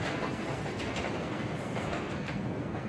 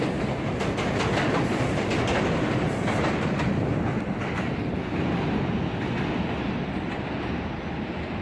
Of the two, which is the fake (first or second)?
first